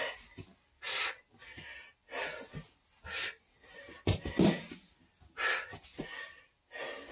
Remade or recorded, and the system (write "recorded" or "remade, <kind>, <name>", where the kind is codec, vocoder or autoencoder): recorded